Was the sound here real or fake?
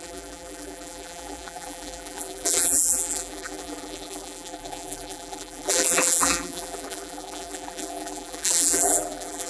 fake